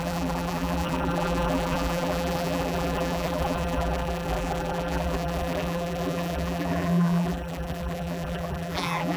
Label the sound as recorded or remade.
remade